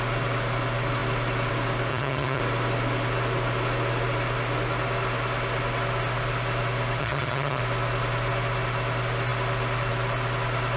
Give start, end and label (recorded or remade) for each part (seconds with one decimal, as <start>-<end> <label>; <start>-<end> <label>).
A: 0.0-1.9 recorded; 1.9-2.4 remade; 2.4-7.0 recorded; 7.0-7.6 remade; 7.6-10.8 recorded